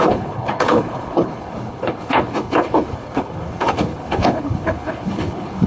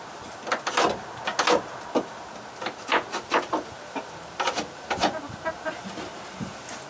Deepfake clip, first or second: first